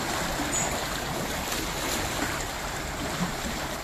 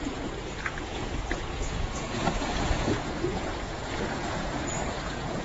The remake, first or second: second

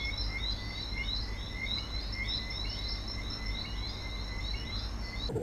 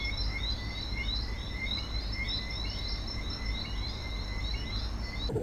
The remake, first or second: second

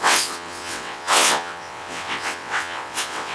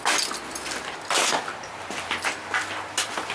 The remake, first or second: first